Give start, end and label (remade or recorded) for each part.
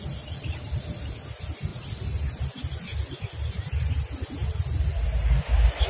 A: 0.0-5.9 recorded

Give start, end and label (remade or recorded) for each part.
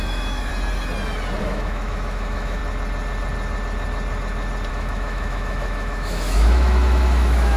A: 0.0-0.5 remade; 0.5-1.4 recorded; 1.4-2.6 remade; 2.6-4.7 recorded; 4.7-7.6 remade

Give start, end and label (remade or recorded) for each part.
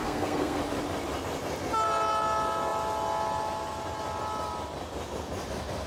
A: 0.0-0.6 remade; 0.6-5.9 recorded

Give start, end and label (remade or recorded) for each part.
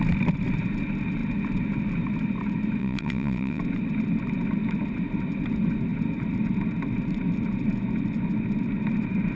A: 0.0-2.8 recorded; 2.8-3.6 remade; 3.6-9.4 recorded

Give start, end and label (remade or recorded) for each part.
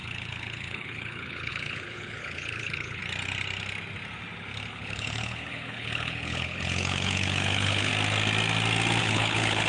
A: 0.0-3.0 remade; 3.0-4.7 recorded; 4.7-7.9 remade; 7.9-9.0 recorded; 9.0-9.7 remade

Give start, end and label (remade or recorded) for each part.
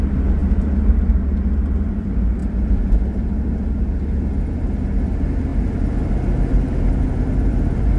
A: 0.0-8.0 recorded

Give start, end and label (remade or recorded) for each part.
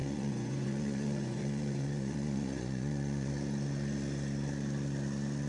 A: 0.0-3.3 remade; 3.3-5.5 recorded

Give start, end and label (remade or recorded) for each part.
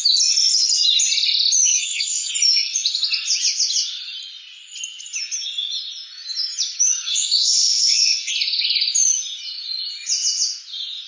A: 0.0-1.7 recorded; 1.7-2.3 remade; 2.3-7.1 recorded; 7.1-8.3 remade; 8.3-11.1 recorded